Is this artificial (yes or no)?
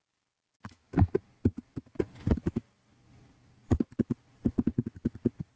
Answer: no